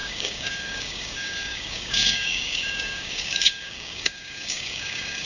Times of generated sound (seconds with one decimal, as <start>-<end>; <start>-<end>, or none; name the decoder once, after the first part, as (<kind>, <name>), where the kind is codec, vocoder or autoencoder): 0.0-5.2 (codec, DAC)